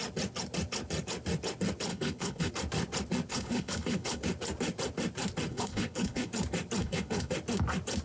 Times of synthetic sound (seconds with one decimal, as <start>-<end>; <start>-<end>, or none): 1.9-2.5; 3.3-4.2; 5.5-6.3; 6.8-7.3